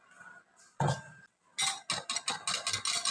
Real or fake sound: real